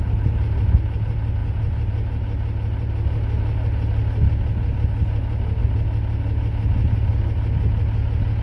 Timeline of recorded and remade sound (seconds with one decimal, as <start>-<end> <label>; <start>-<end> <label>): 0.0-8.4 recorded